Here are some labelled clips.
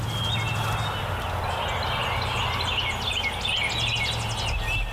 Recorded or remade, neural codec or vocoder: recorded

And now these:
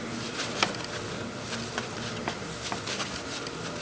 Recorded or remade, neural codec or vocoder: recorded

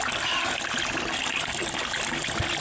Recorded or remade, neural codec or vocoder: recorded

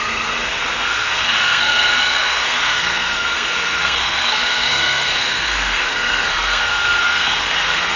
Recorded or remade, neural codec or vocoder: remade, codec, SNAC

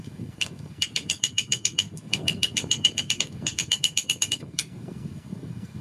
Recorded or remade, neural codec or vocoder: remade, codec, SNAC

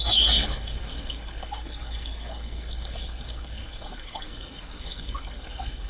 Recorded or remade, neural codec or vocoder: remade, codec, SNAC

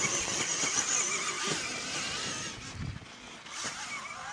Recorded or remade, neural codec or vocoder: recorded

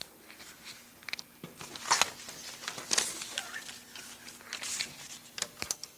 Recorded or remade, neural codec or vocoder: recorded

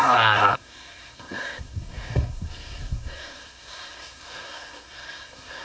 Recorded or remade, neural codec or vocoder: remade, codec, SNAC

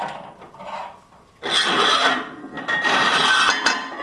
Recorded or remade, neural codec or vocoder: recorded